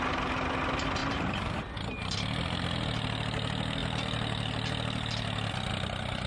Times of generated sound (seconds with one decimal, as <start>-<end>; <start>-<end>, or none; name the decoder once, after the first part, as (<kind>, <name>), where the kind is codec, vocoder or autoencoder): none